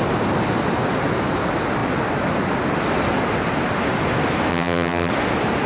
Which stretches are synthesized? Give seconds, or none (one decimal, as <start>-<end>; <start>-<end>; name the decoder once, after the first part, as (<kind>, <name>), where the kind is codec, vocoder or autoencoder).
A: 4.5-5.1 (vocoder, HiFi-GAN)